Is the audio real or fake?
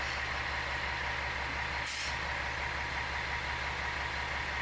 real